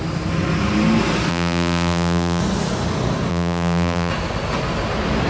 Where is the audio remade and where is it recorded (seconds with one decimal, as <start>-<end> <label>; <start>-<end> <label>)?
0.0-1.3 recorded; 1.3-2.4 remade; 2.4-3.3 recorded; 3.3-4.1 remade; 4.1-5.3 recorded